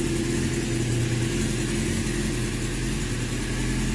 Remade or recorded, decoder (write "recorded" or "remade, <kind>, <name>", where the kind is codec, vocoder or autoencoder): recorded